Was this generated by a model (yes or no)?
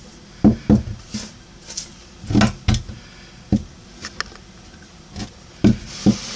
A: no